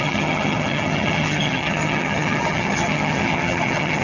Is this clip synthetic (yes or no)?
yes